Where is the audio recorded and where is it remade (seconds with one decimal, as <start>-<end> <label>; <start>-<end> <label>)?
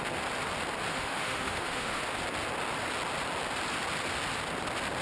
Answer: 0.0-0.9 recorded; 0.9-2.0 remade; 2.0-5.0 recorded